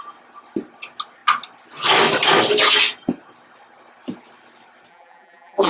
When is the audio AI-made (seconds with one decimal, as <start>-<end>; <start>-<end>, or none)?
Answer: 4.9-5.7